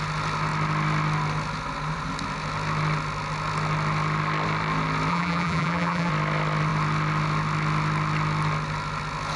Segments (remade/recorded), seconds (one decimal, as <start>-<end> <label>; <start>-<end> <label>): 0.0-5.1 recorded; 5.1-6.1 remade; 6.1-9.4 recorded